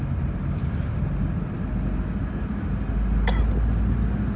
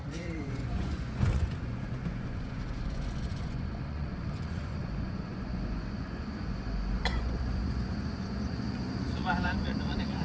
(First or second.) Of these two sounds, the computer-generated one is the second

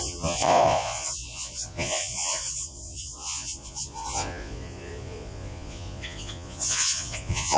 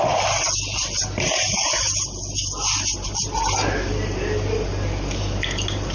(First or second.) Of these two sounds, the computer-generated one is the first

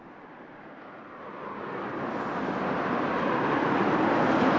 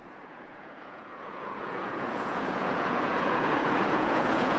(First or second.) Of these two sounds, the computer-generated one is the second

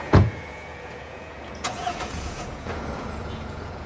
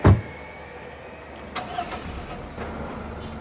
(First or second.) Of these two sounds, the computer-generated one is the first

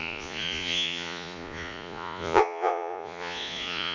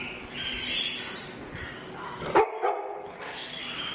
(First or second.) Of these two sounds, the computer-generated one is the first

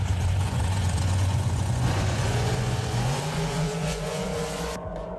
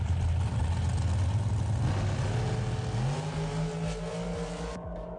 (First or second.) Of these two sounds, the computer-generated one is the first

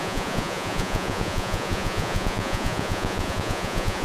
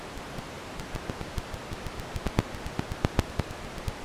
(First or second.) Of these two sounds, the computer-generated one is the first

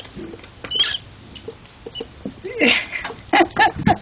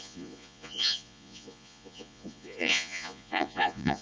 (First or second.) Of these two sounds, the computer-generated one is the second